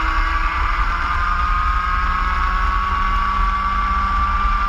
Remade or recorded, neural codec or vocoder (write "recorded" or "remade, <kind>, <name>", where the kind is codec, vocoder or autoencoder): recorded